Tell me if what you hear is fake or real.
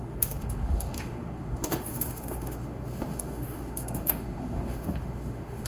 fake